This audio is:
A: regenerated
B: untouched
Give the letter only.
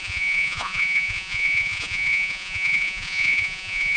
A